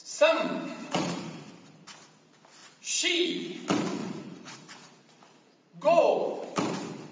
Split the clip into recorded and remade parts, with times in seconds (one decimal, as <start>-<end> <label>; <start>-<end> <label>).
0.0-1.5 remade; 1.5-2.6 recorded; 2.6-3.6 remade; 3.6-4.0 recorded; 4.0-6.0 remade; 6.0-7.1 recorded